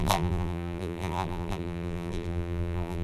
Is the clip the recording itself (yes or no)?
no